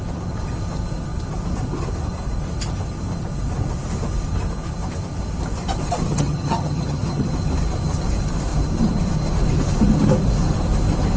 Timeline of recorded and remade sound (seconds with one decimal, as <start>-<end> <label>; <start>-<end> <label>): 0.0-6.1 recorded; 6.1-7.3 remade; 7.3-11.2 recorded